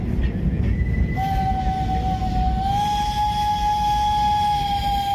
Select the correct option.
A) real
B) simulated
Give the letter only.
A